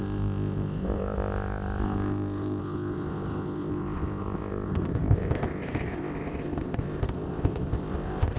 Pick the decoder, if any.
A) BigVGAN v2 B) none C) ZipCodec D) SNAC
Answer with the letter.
C